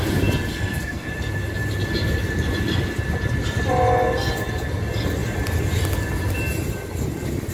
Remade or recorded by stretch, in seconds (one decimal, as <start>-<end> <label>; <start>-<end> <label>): 0.0-0.5 recorded; 0.5-1.1 remade; 1.1-7.5 recorded